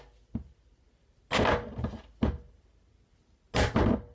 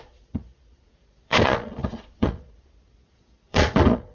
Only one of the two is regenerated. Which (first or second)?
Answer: second